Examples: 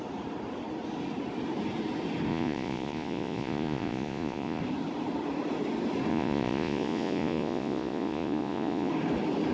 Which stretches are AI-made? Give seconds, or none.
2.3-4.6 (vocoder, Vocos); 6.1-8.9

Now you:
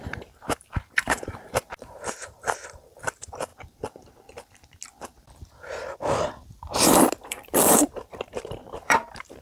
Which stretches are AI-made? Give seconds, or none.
0.0-3.5 (vocoder, BigVGAN v2); 7.2-9.4

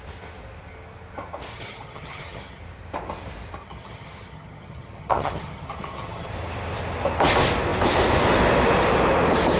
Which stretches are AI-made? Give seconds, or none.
1.5-2.6 (vocoder, HiFi-GAN); 3.6-6.3

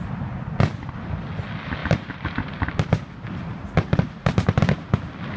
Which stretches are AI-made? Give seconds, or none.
1.8-5.0 (vocoder, BigVGAN v2)

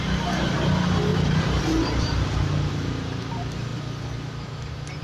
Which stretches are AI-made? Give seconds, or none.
1.1-1.8 (vocoder, BigVGAN v2)

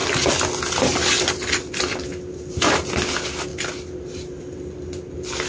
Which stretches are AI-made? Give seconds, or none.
none

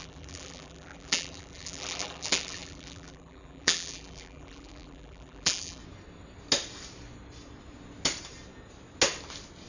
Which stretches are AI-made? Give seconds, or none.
0.0-5.8 (vocoder, BigVGAN v2)